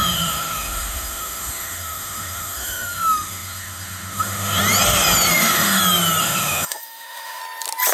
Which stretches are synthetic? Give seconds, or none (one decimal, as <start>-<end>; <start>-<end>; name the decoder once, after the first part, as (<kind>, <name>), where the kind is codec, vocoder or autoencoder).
0.0-4.6 (autoencoder, DAC-VAE); 5.3-5.8; 6.2-7.4